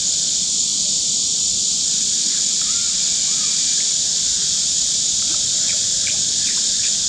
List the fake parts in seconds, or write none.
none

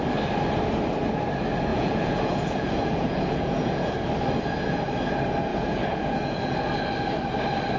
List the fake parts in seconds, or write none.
1.7-3.9 (vocoder, Vocos); 5.5-6.7

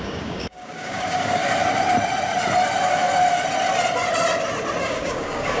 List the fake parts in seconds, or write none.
0.0-1.4 (codec, DAC); 4.8-5.6

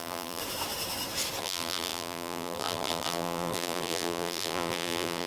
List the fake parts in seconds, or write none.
0.0-0.4 (vocoder, BigVGAN v2); 1.4-5.3

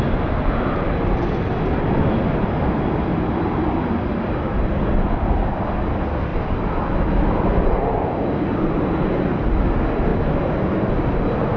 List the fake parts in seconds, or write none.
none